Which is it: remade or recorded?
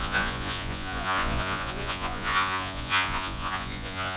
remade